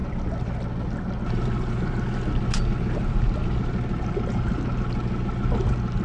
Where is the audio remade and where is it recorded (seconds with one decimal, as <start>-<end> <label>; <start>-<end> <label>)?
0.0-6.0 recorded